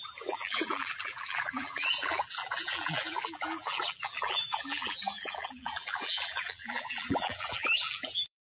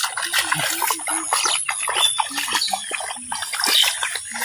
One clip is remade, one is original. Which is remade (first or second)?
first